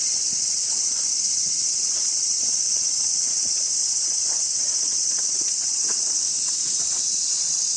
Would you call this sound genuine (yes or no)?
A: no